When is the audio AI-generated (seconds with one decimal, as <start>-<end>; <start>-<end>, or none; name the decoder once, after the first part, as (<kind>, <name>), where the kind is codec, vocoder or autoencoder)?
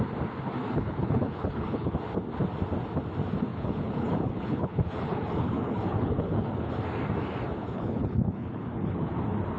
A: 0.6-1.9 (codec, HILCodec); 3.5-6.7; 7.6-9.2